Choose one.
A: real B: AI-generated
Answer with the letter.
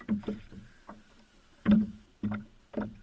B